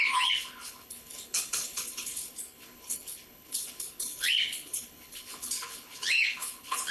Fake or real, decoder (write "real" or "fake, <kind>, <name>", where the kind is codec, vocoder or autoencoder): fake, codec, HILCodec